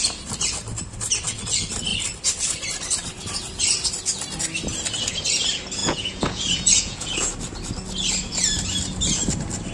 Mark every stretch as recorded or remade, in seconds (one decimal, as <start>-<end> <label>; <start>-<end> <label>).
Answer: 0.0-5.8 recorded; 5.8-7.3 remade; 7.3-9.7 recorded